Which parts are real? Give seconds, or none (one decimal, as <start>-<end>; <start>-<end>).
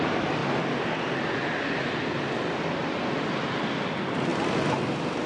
0.4-1.9